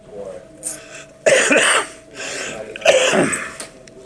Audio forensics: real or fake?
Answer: real